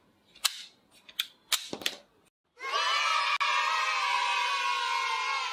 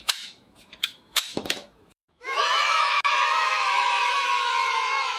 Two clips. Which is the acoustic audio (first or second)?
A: first